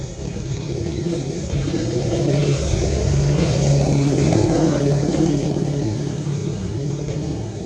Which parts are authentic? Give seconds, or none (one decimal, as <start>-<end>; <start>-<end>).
none